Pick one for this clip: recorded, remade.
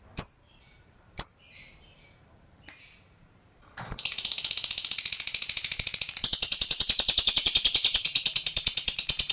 remade